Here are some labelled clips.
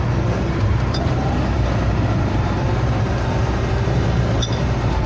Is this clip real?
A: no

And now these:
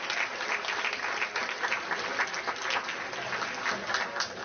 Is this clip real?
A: yes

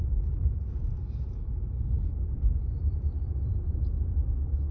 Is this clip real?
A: no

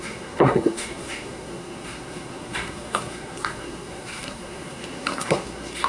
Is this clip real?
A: no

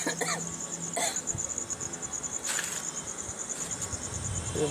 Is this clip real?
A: yes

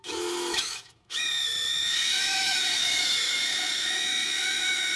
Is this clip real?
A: no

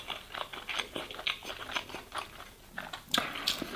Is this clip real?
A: yes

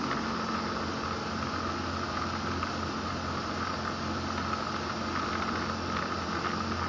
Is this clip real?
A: yes